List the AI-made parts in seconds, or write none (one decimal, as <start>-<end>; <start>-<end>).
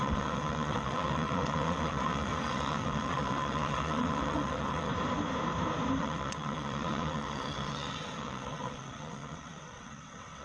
0.0-4.9; 6.0-10.4